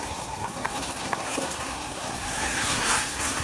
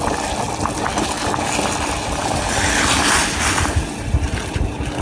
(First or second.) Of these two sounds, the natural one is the second